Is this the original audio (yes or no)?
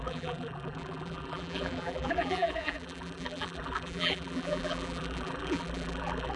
no